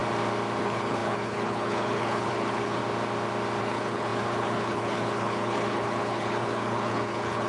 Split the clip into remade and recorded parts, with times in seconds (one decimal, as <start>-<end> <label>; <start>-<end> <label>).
0.0-0.6 recorded; 0.6-2.8 remade; 2.8-3.6 recorded; 3.6-7.5 remade